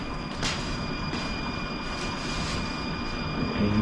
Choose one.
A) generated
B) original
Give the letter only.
B